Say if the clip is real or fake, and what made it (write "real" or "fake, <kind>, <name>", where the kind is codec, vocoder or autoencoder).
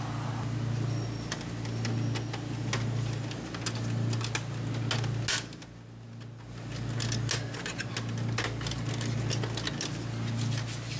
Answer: real